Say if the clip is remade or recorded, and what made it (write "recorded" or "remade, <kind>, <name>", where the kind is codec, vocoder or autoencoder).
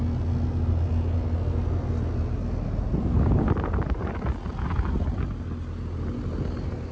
recorded